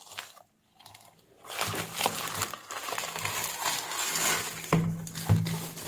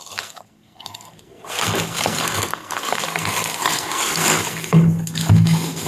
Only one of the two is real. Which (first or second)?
first